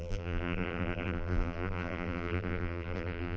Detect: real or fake fake